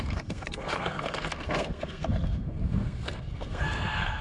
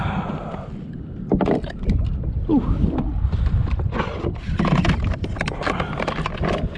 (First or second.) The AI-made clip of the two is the first